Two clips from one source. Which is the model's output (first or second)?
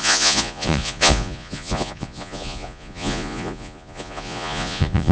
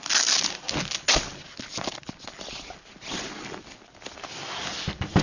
first